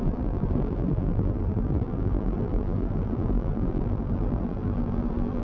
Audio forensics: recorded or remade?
remade